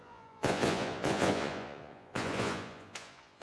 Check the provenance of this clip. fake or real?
fake